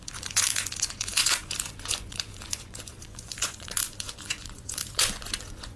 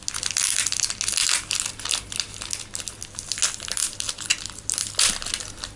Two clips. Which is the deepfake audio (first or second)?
first